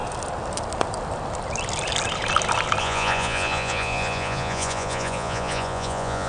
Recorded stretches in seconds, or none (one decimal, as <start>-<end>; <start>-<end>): 0.0-2.8